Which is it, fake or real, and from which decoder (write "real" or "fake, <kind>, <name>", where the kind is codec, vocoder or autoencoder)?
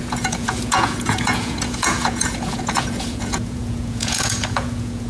fake, vocoder, Vocos